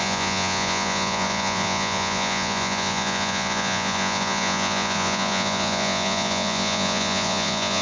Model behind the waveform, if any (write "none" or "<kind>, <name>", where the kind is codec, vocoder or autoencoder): vocoder, Vocos